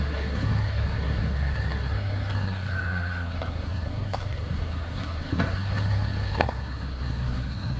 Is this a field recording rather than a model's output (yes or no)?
no